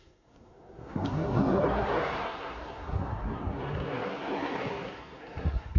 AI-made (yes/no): yes